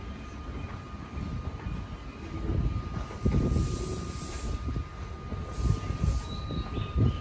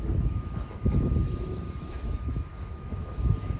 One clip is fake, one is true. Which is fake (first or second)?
second